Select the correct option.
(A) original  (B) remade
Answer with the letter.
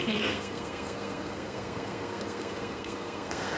B